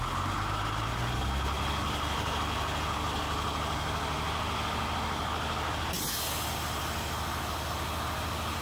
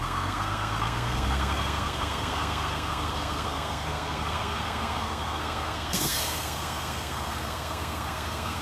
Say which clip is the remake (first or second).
second